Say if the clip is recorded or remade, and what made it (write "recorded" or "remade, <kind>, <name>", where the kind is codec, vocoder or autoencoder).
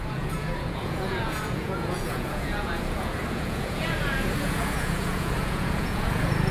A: remade, vocoder, Vocos